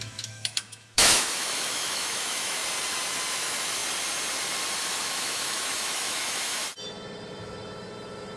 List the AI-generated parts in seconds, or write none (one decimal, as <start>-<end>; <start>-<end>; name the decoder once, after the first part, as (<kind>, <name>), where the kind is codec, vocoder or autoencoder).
0.0-2.6 (autoencoder, DAC-VAE); 3.3-3.8; 5.0-6.6